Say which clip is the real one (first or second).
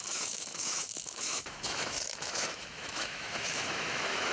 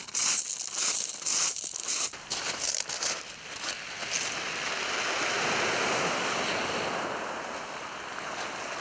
second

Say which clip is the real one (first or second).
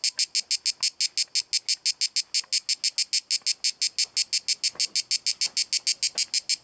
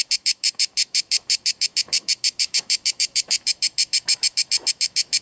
first